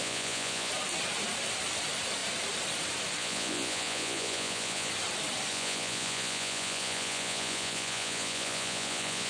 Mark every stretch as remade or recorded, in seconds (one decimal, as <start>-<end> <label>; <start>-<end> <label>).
0.0-0.7 remade; 0.7-3.2 recorded; 3.2-4.9 remade; 4.9-5.5 recorded; 5.5-9.3 remade